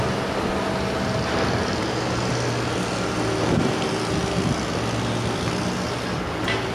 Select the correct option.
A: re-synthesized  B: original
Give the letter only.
B